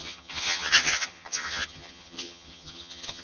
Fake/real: fake